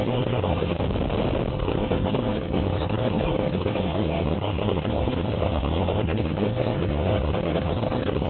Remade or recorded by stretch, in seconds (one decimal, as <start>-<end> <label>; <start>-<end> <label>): 0.0-0.8 remade; 0.8-1.5 recorded; 1.5-8.3 remade